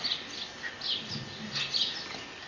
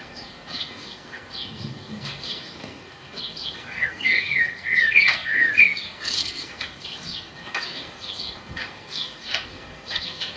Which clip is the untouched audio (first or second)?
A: first